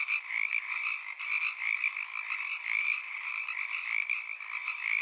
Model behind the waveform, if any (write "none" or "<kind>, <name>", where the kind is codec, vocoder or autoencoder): none